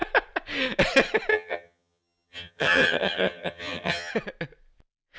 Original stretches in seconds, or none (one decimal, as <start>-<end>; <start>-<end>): 0.0-1.3; 4.1-5.2